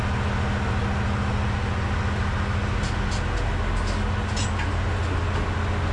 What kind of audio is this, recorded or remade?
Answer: recorded